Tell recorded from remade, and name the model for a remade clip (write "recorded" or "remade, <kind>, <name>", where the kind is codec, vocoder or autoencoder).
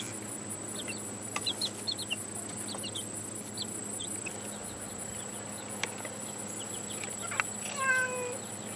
recorded